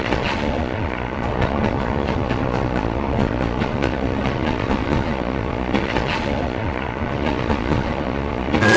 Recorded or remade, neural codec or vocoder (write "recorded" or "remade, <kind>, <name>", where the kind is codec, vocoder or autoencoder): remade, vocoder, Vocos